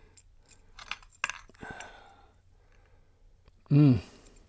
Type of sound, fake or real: real